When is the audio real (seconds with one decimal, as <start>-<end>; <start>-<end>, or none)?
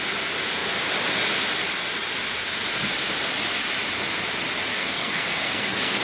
0.0-4.7